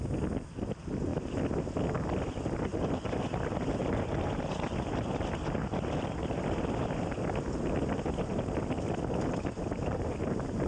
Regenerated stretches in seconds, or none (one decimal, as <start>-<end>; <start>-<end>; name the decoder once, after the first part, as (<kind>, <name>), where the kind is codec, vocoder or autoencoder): none